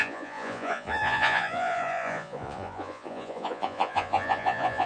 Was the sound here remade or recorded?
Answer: remade